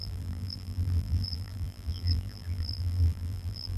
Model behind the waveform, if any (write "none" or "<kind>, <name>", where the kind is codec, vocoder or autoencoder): vocoder, BigVGAN v2